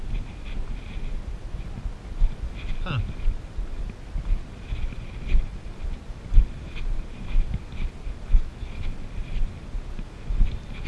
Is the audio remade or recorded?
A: recorded